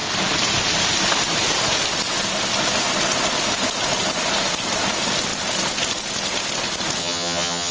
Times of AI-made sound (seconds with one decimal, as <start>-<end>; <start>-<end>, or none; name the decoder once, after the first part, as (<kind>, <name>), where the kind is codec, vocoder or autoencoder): 7.0-7.7 (vocoder, HiFi-GAN)